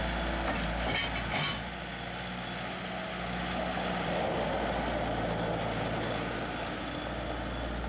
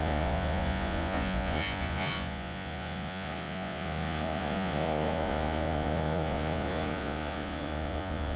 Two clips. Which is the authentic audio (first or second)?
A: first